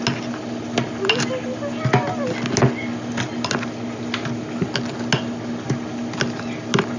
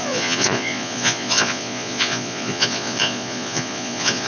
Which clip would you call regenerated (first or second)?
second